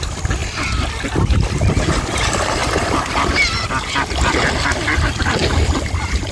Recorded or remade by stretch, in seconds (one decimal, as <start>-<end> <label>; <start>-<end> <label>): 0.0-6.3 recorded